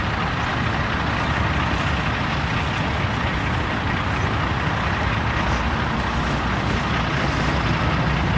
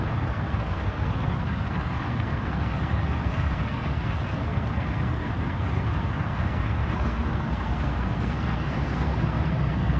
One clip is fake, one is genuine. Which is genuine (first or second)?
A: first